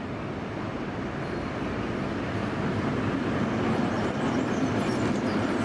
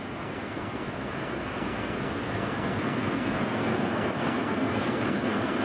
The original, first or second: first